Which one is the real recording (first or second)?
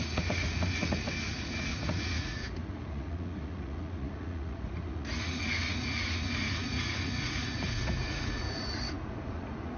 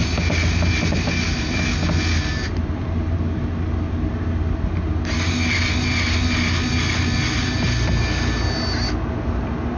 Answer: second